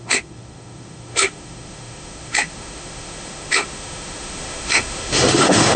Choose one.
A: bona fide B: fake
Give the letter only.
B